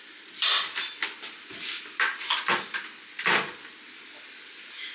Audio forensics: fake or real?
real